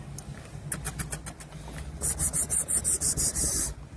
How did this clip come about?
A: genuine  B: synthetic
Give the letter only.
A